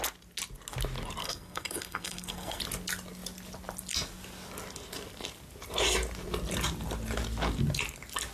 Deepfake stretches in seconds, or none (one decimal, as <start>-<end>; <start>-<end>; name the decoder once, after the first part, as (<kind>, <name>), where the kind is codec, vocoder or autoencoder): 1.2-2.6 (codec, SNAC)